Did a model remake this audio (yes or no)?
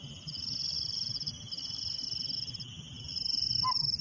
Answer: no